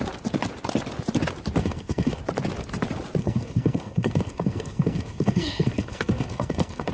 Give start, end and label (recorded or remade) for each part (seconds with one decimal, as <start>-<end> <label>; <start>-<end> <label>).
0.0-1.6 recorded; 1.6-2.2 remade; 2.2-3.2 recorded; 3.2-6.9 remade